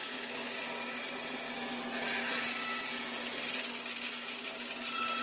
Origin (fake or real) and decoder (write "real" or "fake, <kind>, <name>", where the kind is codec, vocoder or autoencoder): real